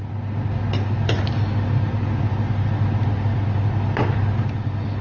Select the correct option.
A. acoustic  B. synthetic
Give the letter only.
A